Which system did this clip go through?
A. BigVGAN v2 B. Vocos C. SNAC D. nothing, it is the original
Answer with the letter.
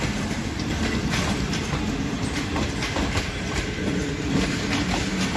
D